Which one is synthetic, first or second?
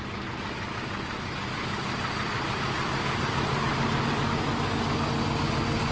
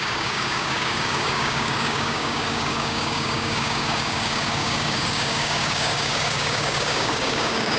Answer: second